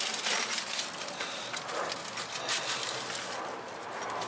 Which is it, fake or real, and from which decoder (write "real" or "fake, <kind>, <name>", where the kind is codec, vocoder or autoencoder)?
real